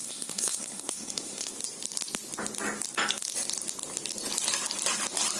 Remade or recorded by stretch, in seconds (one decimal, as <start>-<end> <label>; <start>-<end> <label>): 0.0-1.5 remade; 1.5-5.4 recorded